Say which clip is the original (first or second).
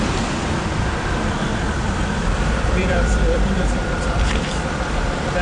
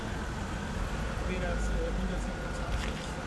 second